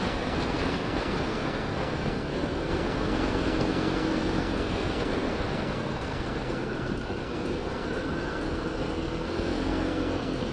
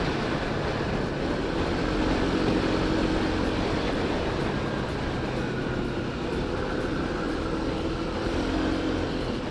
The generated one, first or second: first